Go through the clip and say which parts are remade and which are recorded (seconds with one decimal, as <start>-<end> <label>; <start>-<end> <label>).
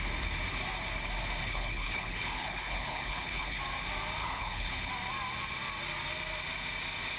0.0-1.4 recorded; 1.4-3.6 remade; 3.6-4.2 recorded; 4.2-4.9 remade; 4.9-7.2 recorded